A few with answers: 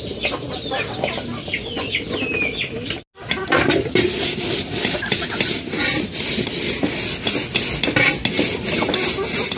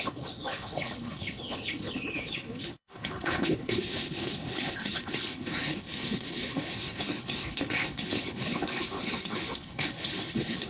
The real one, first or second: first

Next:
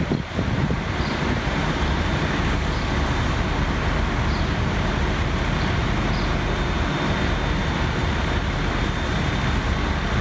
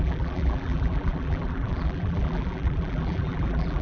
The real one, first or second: first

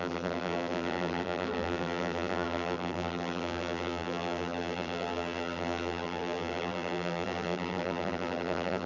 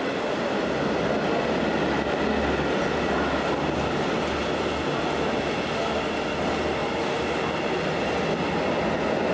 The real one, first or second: second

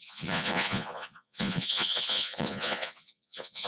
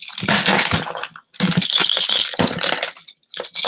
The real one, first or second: second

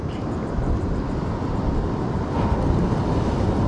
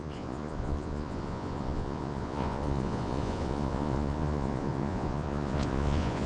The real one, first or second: first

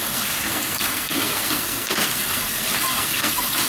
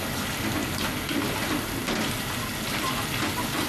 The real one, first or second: second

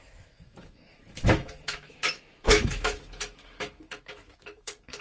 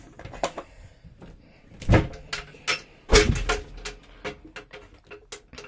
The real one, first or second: second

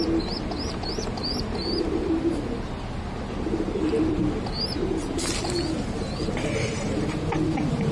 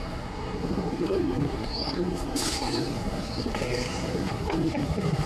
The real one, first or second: first